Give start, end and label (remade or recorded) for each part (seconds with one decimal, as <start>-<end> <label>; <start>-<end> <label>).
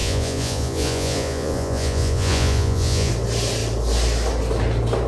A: 0.0-3.1 remade; 3.1-5.1 recorded